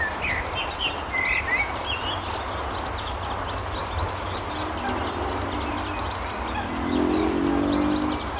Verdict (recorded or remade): recorded